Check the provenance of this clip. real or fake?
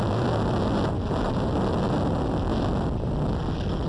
real